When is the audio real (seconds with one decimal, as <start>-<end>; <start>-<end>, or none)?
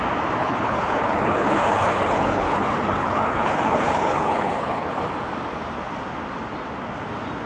0.0-0.4; 4.9-7.5